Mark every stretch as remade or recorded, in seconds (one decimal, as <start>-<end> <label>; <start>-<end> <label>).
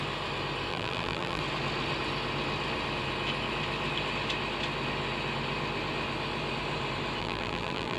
0.0-0.7 recorded; 0.7-1.4 remade; 1.4-7.2 recorded; 7.2-8.0 remade